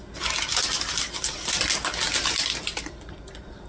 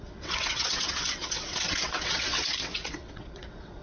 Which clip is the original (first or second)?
first